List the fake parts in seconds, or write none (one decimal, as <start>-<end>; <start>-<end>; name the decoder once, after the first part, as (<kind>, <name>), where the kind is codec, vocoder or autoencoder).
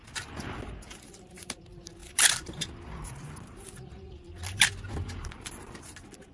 none